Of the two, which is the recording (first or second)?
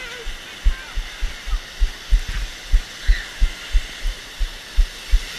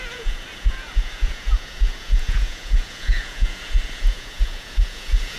first